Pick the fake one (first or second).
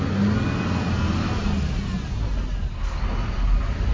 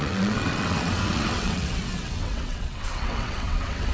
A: second